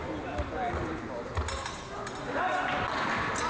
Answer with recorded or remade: recorded